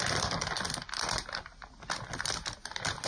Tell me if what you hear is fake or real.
real